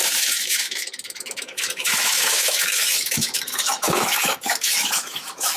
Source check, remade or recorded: remade